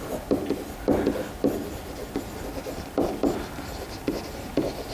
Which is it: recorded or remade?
recorded